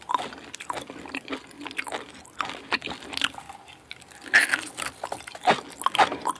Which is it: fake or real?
real